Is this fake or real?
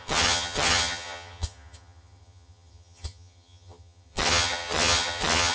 fake